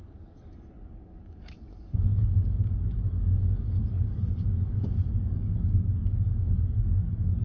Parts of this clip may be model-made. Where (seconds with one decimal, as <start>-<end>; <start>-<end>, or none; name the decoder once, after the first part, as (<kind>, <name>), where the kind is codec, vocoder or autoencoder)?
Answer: 0.0-7.4 (codec, DAC)